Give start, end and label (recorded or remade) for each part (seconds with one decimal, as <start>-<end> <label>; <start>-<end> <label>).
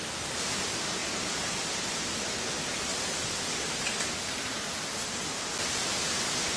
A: 0.0-2.9 recorded; 2.9-4.9 remade; 4.9-6.6 recorded